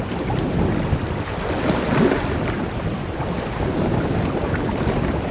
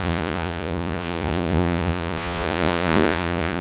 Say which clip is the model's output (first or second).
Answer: second